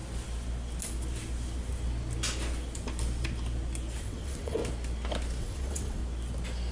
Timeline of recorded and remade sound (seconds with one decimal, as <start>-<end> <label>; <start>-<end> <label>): 0.0-4.0 recorded; 4.0-4.6 remade; 4.6-5.4 recorded; 5.4-6.0 remade; 6.0-6.7 recorded